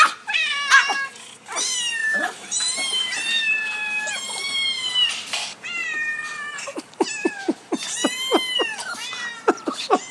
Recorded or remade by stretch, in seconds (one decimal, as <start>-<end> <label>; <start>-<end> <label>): 0.0-2.0 recorded; 2.0-5.1 remade; 5.1-5.8 recorded; 5.8-7.4 remade; 7.4-8.0 recorded; 8.0-8.6 remade; 8.6-10.1 recorded